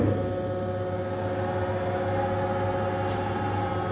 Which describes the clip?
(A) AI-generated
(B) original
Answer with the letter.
B